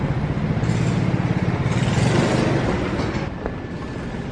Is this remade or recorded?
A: recorded